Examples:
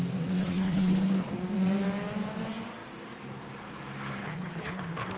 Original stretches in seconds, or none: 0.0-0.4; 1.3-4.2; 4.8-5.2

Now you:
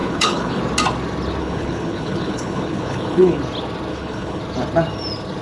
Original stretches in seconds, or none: 0.6-1.4; 3.4-3.9; 4.4-5.4